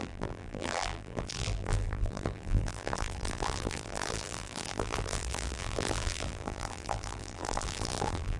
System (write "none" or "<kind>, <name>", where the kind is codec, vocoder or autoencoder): vocoder, BigVGAN v2